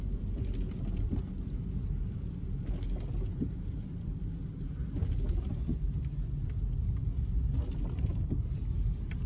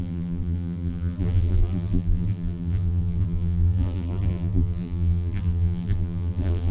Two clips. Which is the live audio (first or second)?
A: first